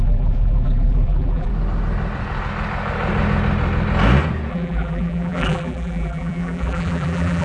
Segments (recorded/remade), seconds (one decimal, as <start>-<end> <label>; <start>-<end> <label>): 0.0-1.5 remade; 1.5-4.5 recorded; 4.5-7.4 remade